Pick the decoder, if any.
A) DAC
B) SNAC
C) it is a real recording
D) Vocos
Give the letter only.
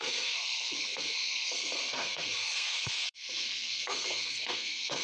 B